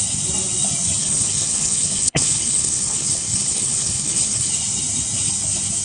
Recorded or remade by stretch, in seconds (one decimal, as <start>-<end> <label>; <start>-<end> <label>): 0.0-1.0 recorded; 1.0-4.5 remade; 4.5-5.8 recorded